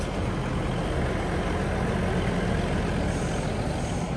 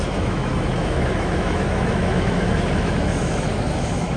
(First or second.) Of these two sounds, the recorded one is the first